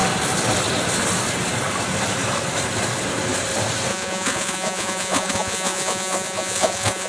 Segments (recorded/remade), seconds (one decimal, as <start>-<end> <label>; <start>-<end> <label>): 0.0-3.9 recorded; 3.9-7.1 remade